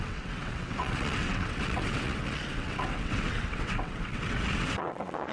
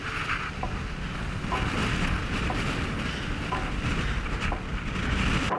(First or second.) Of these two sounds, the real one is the second